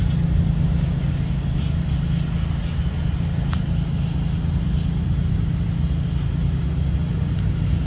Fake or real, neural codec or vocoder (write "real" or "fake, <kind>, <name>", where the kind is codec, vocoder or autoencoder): real